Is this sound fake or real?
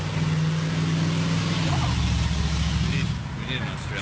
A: real